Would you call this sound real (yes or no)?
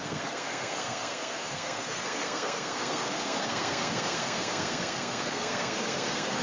no